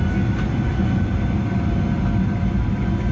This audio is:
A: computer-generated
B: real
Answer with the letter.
B